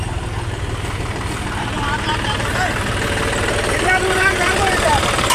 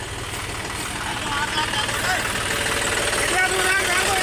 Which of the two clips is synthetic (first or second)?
first